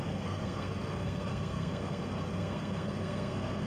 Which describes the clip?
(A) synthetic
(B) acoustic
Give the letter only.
A